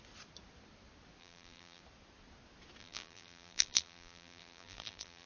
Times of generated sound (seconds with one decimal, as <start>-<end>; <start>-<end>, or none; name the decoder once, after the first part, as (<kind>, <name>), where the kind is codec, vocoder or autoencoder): 1.2-1.8 (vocoder, BigVGAN v2); 2.8-5.3

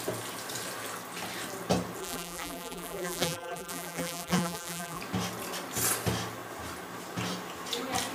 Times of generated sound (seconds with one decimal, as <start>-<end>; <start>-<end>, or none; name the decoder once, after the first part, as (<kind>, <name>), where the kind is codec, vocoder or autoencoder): 2.0-5.0 (vocoder, BigVGAN v2)

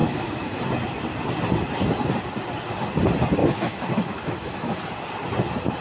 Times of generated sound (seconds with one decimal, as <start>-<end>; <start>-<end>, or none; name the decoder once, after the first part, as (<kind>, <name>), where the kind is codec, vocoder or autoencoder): 0.0-0.6 (autoencoder, DAC-VAE); 3.4-4.8

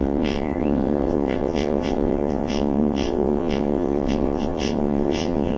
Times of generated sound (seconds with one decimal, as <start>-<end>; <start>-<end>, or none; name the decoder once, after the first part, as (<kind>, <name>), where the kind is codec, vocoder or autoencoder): 0.0-5.6 (vocoder, WaveNeXt)

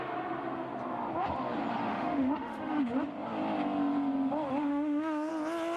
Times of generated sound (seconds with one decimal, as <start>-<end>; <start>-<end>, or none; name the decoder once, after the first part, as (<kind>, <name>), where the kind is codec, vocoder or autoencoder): 1.9-2.8 (autoencoder, DAC-VAE); 4.7-5.3